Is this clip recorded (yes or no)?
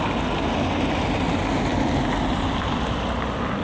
yes